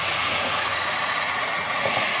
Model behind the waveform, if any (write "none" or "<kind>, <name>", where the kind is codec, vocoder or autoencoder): vocoder, Vocos